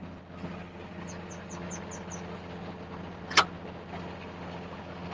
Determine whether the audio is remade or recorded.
recorded